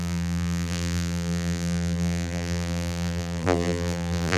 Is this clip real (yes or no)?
no